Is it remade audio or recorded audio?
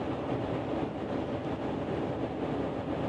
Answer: recorded